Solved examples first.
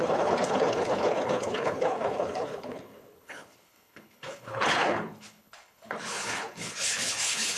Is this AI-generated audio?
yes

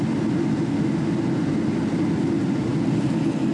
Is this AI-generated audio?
no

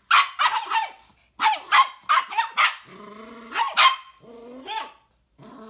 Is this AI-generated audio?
no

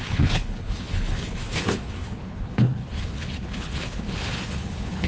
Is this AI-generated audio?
yes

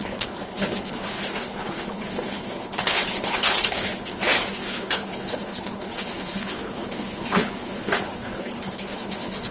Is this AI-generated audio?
yes